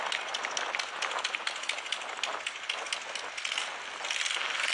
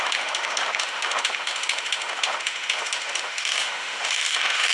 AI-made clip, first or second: second